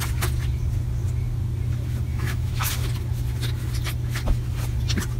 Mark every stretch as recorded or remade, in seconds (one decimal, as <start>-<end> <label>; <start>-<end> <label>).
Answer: 0.0-2.1 recorded; 2.1-2.7 remade; 2.7-5.2 recorded